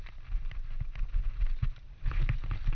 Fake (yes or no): no